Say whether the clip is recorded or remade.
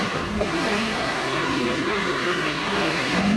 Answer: remade